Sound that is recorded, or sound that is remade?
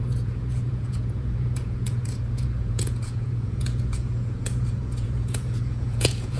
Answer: remade